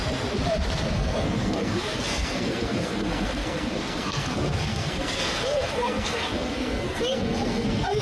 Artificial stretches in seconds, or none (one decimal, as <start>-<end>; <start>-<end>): 0.9-8.0